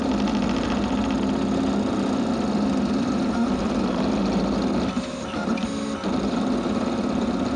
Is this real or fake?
real